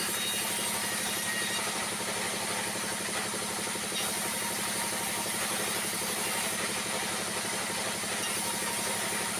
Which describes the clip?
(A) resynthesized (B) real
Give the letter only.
B